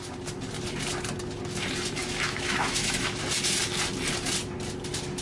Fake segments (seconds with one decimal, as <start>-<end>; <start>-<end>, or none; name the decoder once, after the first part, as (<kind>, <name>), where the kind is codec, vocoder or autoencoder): 2.0-3.2 (autoencoder, DAC-VAE)